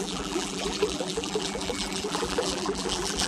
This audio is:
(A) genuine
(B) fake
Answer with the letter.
B